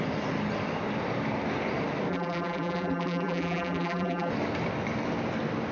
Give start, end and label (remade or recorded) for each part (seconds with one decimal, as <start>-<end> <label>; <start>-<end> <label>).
0.0-2.1 recorded; 2.1-4.3 remade; 4.3-5.7 recorded